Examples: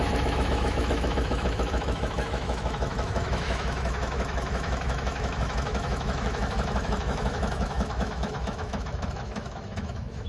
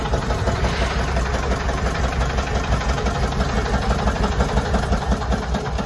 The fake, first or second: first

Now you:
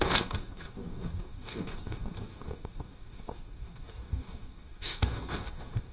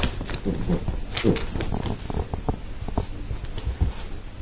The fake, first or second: first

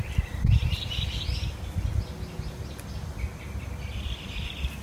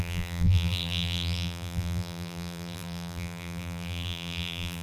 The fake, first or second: second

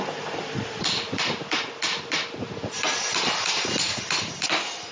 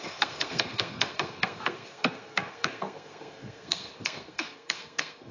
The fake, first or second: second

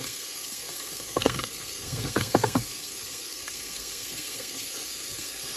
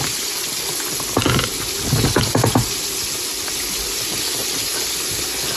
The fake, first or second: first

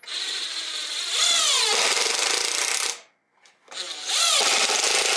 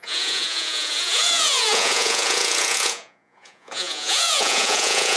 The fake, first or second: second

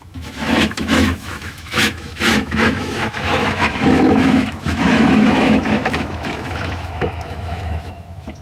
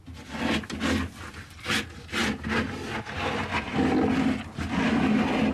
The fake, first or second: first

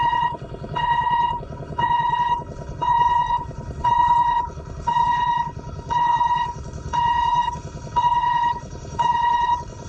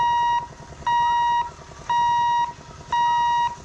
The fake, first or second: first